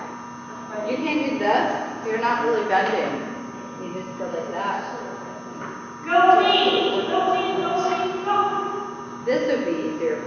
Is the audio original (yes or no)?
yes